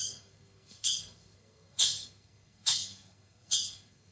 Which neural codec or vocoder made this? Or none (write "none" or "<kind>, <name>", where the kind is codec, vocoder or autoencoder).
codec, SNAC